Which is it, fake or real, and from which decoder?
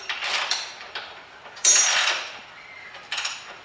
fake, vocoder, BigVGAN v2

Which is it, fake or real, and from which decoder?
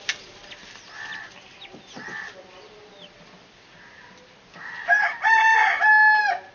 real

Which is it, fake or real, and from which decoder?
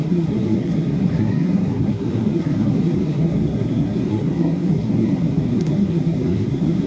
fake, codec, SNAC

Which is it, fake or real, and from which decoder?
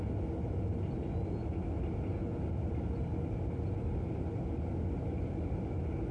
real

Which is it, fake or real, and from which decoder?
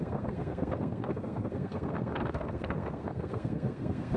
fake, codec, SNAC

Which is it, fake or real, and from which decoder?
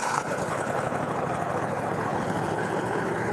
fake, codec, HILCodec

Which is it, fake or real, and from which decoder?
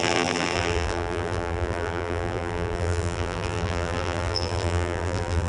fake, vocoder, BigVGAN v2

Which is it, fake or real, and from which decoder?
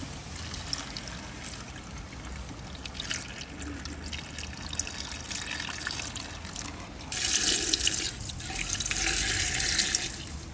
real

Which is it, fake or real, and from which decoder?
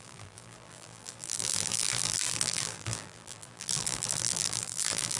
fake, vocoder, BigVGAN v2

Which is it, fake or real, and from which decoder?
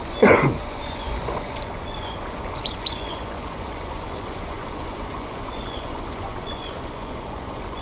fake, vocoder, Vocos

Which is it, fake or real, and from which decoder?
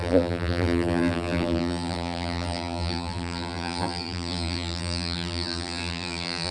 fake, vocoder, BigVGAN v2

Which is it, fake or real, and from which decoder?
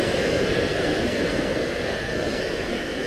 fake, codec, SNAC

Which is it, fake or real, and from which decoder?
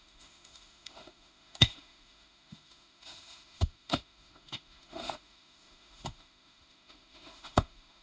fake, autoencoder, DAC-VAE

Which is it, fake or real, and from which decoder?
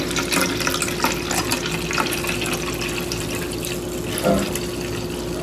real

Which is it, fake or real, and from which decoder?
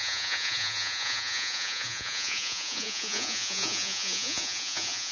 fake, vocoder, Vocos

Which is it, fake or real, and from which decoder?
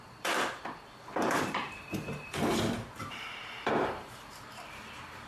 fake, vocoder, BigVGAN v2